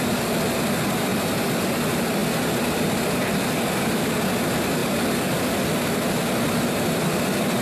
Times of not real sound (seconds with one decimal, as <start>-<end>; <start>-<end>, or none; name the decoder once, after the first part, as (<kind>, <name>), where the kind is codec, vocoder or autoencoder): none